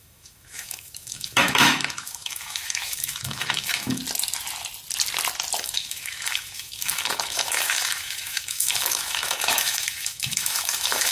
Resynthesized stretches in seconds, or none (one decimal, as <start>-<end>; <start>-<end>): 0.0-4.0; 5.6-11.1